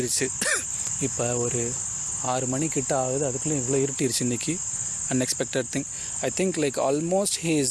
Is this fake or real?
real